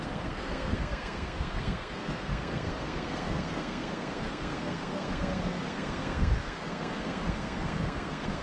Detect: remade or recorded remade